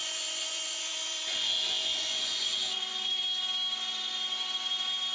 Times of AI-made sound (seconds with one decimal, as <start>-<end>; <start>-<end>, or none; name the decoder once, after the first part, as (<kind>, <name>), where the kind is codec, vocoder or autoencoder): 0.0-3.1 (vocoder, Vocos)